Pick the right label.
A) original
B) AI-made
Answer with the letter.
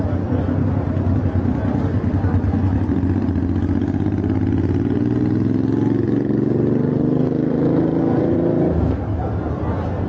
A